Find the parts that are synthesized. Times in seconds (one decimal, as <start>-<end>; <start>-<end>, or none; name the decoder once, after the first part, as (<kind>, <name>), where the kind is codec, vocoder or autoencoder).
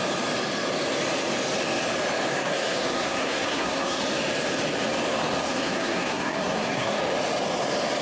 2.3-4.0 (codec, SNAC); 5.5-7.0